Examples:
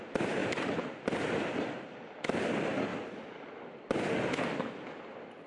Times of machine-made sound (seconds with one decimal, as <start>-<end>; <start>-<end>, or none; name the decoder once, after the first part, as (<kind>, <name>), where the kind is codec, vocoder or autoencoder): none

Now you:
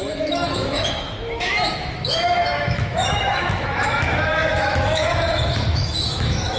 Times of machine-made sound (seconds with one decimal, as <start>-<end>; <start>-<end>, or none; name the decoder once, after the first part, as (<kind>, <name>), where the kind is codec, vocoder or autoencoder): 0.0-6.6 (autoencoder, DAC-VAE)

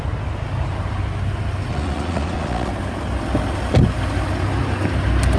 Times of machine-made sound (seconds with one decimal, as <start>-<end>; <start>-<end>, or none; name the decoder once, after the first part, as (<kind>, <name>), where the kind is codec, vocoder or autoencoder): 1.7-2.7 (vocoder, Vocos)